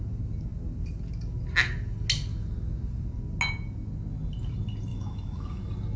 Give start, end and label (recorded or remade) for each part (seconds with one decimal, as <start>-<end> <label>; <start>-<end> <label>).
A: 0.0-4.9 recorded; 4.9-5.6 remade; 5.6-6.0 recorded